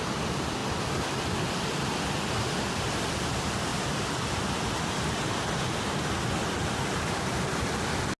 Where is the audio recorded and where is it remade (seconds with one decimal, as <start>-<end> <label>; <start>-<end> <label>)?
0.0-8.2 recorded